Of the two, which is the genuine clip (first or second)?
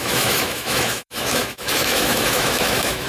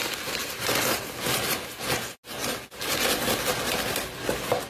second